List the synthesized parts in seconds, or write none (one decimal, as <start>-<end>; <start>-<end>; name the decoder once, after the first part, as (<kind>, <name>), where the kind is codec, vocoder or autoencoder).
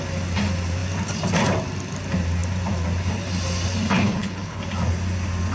4.0-4.6 (codec, HILCodec)